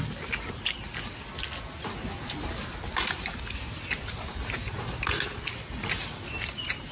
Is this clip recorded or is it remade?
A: recorded